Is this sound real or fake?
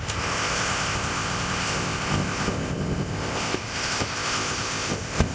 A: fake